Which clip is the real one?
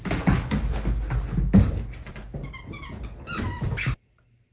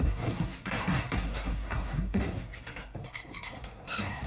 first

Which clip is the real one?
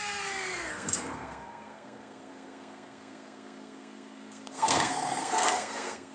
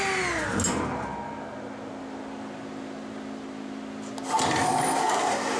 second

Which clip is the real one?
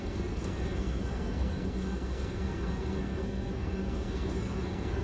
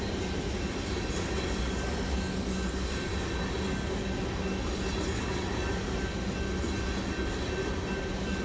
second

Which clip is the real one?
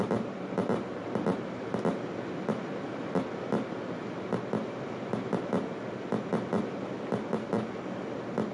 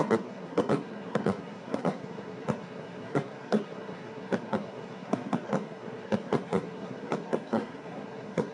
first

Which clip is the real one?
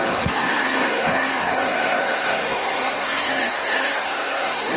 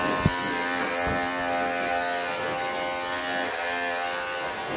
second